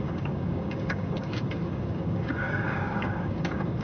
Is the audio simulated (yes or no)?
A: yes